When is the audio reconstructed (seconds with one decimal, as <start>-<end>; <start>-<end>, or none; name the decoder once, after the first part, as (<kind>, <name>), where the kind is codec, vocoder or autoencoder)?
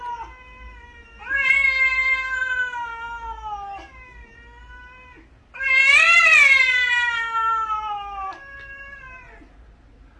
none